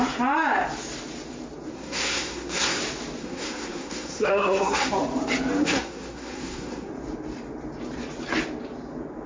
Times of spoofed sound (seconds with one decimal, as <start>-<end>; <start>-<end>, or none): 1.7-2.8; 3.2-4.9; 5.6-6.9